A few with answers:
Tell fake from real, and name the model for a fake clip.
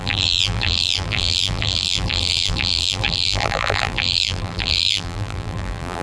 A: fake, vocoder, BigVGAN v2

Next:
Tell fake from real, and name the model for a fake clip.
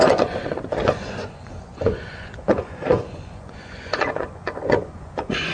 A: fake, vocoder, Vocos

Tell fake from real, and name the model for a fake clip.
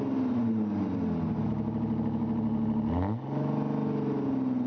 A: real